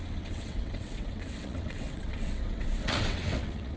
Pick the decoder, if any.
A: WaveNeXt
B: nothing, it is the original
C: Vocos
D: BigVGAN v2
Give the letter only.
A